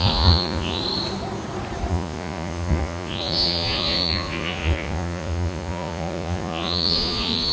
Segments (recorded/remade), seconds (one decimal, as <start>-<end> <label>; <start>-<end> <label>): 0.0-0.8 remade; 0.8-1.9 recorded; 1.9-7.5 remade

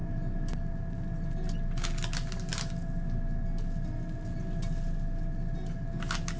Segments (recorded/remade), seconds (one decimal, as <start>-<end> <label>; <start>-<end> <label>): 0.0-6.4 recorded

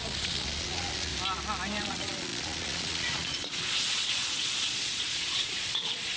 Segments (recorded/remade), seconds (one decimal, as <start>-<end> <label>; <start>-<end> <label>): 0.0-1.1 remade; 1.1-1.8 recorded; 1.8-6.2 remade

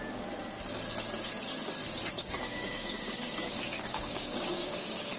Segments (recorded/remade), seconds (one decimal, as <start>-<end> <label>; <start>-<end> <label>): 0.0-2.2 recorded; 2.2-5.2 remade

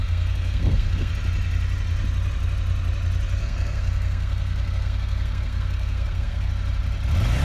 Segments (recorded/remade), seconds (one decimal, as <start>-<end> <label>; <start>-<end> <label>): 0.0-1.1 remade; 1.1-3.4 recorded; 3.4-6.5 remade; 6.5-7.4 recorded

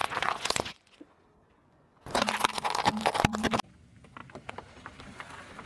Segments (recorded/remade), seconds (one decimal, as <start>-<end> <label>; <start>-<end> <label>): 0.0-1.0 remade; 1.0-1.6 recorded; 1.6-2.3 remade; 2.3-5.7 recorded

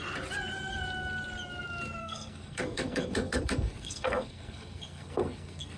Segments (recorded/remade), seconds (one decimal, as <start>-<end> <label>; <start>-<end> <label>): 0.0-2.0 recorded; 2.0-5.8 remade